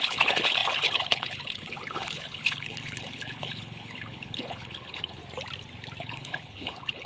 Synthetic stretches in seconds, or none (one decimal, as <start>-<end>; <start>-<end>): 0.0-5.2; 6.0-7.1